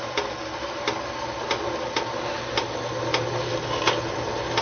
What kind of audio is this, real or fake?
real